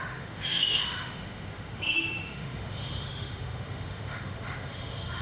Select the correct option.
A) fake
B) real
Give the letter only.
A